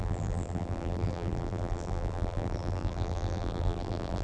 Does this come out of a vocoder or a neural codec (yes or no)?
yes